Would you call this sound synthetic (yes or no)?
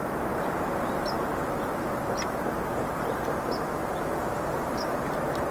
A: yes